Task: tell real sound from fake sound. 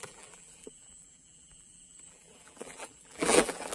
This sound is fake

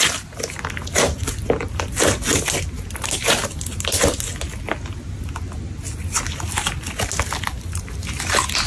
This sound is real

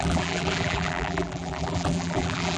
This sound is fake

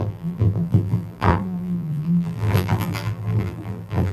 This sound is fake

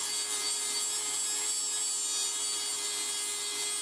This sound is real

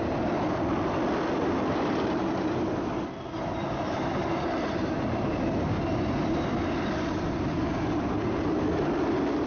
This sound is real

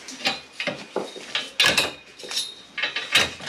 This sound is real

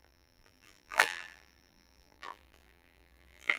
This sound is fake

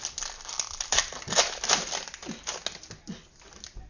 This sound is real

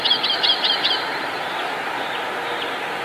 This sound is real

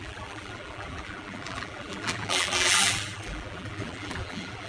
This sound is fake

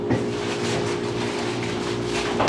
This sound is fake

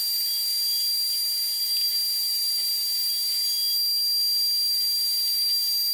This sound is real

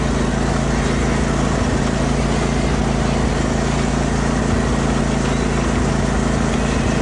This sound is real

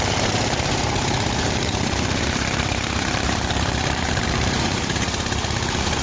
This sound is fake